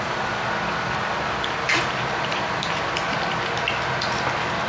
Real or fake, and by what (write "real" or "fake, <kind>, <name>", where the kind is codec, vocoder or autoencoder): real